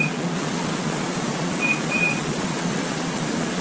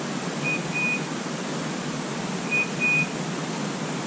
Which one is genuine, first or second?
second